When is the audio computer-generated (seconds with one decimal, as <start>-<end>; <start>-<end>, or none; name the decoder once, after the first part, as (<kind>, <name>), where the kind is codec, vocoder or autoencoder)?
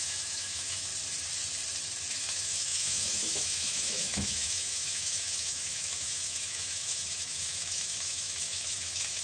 0.0-0.9 (autoencoder, DAC-VAE); 2.1-9.2